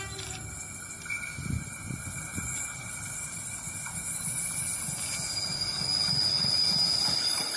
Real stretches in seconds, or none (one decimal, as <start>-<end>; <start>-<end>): 0.0-2.3; 2.9-7.6